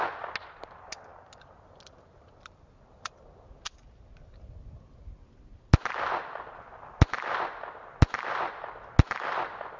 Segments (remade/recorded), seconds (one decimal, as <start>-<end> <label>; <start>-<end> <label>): 0.0-9.8 recorded